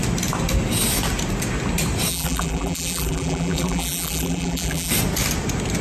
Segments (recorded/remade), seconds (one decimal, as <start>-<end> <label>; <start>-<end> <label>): 0.0-2.1 recorded; 2.1-4.9 remade; 4.9-5.8 recorded